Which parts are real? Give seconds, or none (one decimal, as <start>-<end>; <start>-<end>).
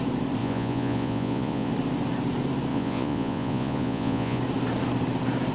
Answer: 0.0-0.4; 1.7-2.7; 4.4-5.5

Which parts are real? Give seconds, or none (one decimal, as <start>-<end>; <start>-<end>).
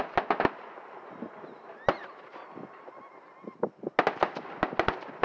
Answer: 0.0-5.2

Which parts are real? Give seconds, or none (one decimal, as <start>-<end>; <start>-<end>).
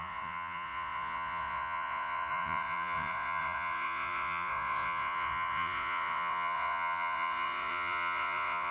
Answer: none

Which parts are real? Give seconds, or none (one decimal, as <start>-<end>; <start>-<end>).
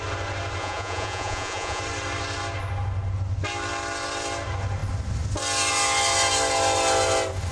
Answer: 0.0-0.6; 1.8-7.5